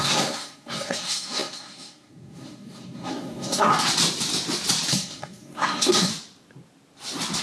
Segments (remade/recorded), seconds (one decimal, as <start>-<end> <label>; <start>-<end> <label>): 0.0-3.7 remade; 3.7-4.9 recorded; 4.9-6.1 remade; 6.1-7.4 recorded